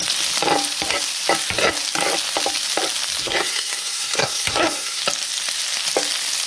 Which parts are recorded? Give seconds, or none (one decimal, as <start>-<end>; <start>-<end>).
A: 0.0-3.2; 5.0-6.5